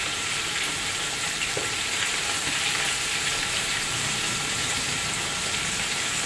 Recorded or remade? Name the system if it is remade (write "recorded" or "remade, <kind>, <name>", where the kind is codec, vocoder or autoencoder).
remade, vocoder, BigVGAN v2